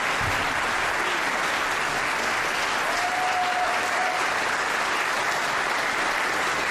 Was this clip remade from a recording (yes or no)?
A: no